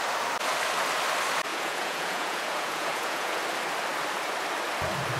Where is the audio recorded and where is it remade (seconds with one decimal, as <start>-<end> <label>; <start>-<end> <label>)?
0.0-1.5 recorded; 1.5-3.4 remade; 3.4-5.2 recorded